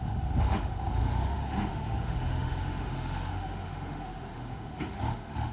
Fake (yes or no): yes